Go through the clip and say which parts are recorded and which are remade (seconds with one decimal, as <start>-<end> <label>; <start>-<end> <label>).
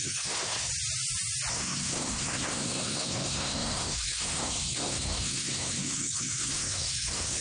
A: 0.0-0.7 remade; 0.7-1.5 recorded; 1.5-7.4 remade